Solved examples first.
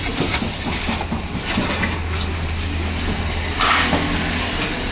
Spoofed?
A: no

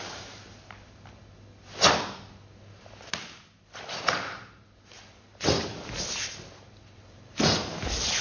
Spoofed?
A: no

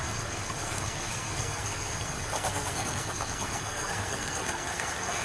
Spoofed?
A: yes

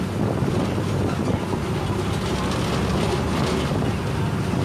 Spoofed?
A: no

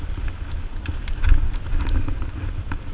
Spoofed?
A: no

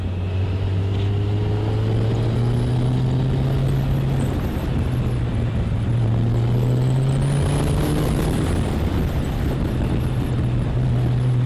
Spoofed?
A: no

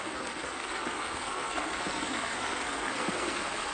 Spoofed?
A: yes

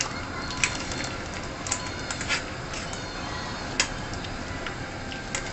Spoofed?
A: no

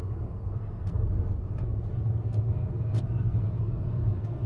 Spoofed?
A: yes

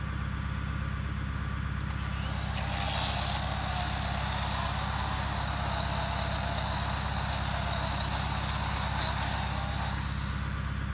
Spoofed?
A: no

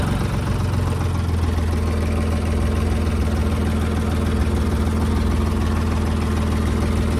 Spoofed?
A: no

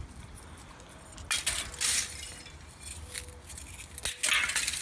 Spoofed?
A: no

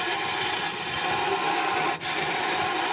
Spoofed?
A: no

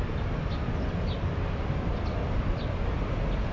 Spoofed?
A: no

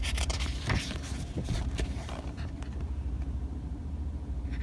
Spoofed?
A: yes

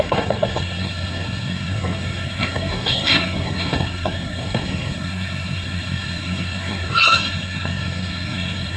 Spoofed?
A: yes